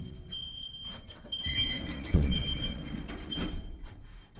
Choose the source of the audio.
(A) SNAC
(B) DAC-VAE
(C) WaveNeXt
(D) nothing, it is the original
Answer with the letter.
C